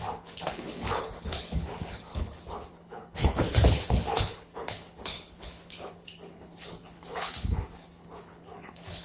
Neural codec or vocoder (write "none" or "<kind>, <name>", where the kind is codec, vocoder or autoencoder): codec, HILCodec